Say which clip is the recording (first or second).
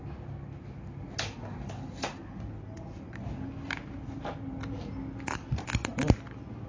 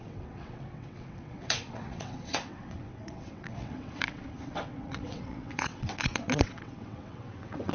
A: first